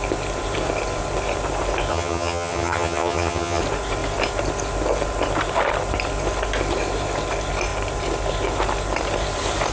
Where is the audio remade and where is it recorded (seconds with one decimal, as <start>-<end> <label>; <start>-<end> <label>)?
0.0-1.9 recorded; 1.9-3.6 remade; 3.6-9.7 recorded